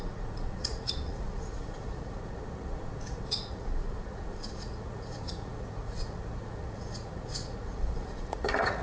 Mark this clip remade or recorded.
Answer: remade